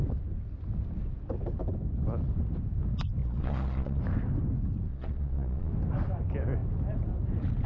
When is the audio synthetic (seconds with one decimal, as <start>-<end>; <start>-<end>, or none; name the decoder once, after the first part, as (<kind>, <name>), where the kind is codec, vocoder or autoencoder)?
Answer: 3.2-4.0 (vocoder, Vocos); 4.9-5.7